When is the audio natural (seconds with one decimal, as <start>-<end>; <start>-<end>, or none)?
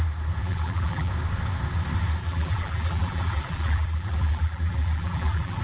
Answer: 0.0-0.4; 1.1-2.2